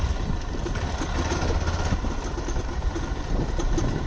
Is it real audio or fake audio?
real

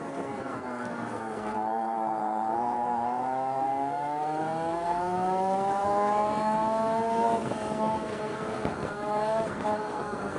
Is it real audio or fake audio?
fake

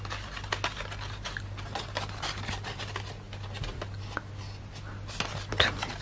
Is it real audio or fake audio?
real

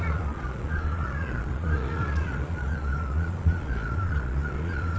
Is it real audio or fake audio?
fake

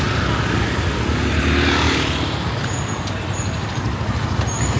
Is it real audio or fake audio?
real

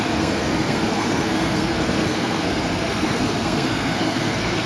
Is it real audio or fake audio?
fake